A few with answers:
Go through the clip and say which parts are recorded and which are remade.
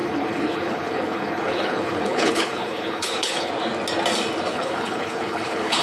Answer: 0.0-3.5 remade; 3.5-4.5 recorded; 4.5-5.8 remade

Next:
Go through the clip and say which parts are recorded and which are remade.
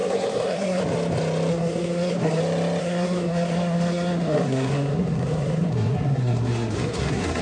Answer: 0.0-0.8 remade; 0.8-1.5 recorded; 1.5-2.4 remade; 2.4-2.8 recorded; 2.8-7.4 remade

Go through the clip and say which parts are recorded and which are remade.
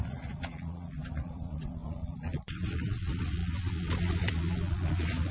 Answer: 0.0-5.3 remade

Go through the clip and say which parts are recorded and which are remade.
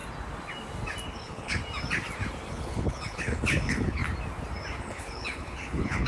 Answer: 0.0-1.2 recorded; 1.2-1.6 remade; 1.6-2.5 recorded; 2.5-4.0 remade; 4.0-4.8 recorded; 4.8-6.1 remade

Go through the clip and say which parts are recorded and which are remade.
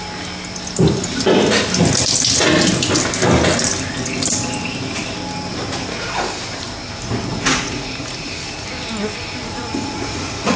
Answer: 0.0-7.3 recorded; 7.3-8.3 remade; 8.3-9.4 recorded; 9.4-10.6 remade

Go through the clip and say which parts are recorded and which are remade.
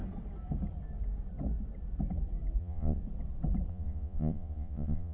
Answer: 0.0-2.6 recorded; 2.6-3.0 remade; 3.0-3.7 recorded; 3.7-5.1 remade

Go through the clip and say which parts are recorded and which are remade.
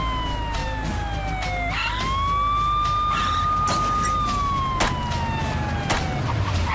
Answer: 0.0-6.7 recorded